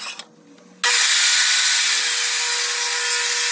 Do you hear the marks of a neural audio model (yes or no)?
no